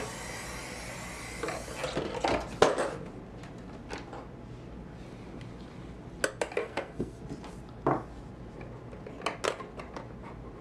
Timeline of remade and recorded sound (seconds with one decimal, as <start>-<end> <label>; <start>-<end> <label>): 0.0-6.6 recorded; 6.6-7.2 remade; 7.2-10.6 recorded